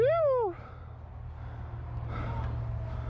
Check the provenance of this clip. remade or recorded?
recorded